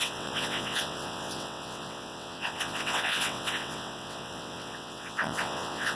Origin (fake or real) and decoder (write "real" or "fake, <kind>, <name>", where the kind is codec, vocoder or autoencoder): fake, vocoder, WaveNeXt